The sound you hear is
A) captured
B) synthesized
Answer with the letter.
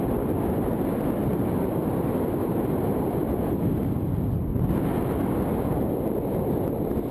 A